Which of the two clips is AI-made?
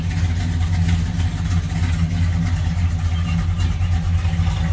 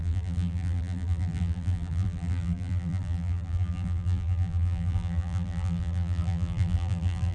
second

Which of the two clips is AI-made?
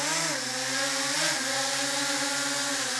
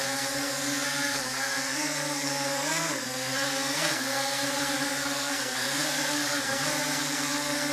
second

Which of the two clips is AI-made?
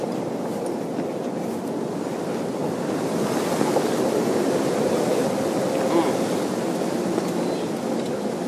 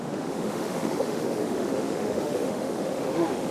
second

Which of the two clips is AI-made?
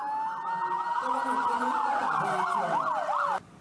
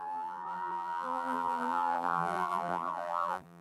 second